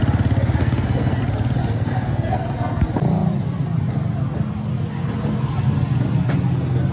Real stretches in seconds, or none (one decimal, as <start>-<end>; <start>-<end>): 0.0-0.6; 1.2-1.6; 2.8-6.9